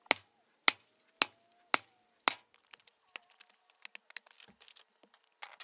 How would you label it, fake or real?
real